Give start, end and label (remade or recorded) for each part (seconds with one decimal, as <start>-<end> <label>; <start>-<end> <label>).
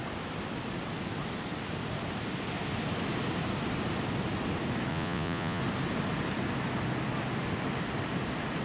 0.0-4.9 recorded; 4.9-5.6 remade; 5.6-8.6 recorded